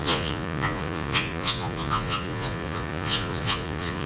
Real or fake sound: fake